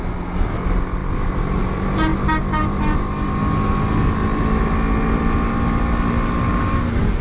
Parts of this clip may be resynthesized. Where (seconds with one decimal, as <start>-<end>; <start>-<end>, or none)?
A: 6.5-7.2